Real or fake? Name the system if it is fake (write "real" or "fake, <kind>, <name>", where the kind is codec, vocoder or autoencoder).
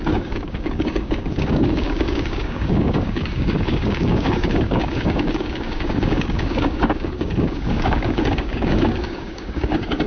fake, codec, DAC